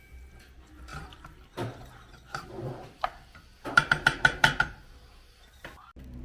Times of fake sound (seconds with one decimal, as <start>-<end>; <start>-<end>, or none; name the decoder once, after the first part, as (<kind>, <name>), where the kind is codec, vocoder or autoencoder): 0.9-4.6 (vocoder, BigVGAN v2)